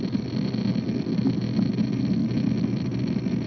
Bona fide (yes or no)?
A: yes